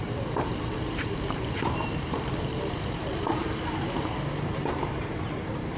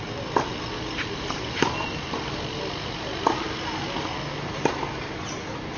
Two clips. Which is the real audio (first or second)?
second